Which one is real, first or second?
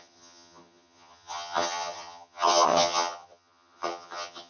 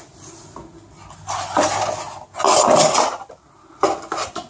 second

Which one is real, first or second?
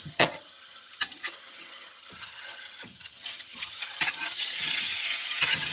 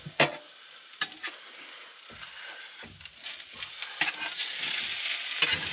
second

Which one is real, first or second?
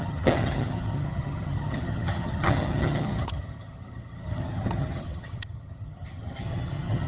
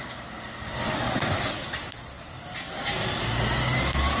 second